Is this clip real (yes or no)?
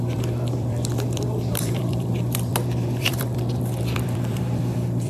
no